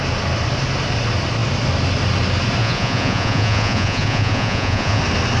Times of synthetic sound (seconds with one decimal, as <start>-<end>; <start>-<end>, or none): 2.6-5.0